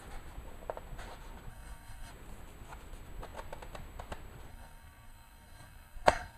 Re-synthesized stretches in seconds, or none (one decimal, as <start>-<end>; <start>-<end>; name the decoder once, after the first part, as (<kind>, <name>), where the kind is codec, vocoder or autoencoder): 1.5-2.1 (codec, SNAC); 4.5-6.4